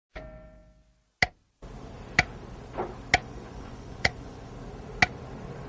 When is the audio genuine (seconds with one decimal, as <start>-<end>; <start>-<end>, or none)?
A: 0.0-3.2; 4.5-5.7